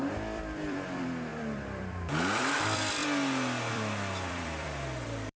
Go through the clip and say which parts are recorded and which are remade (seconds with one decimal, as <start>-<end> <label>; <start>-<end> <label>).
0.0-3.0 remade; 3.0-3.7 recorded; 3.7-5.4 remade